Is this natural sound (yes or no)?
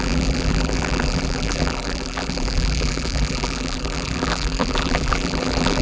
no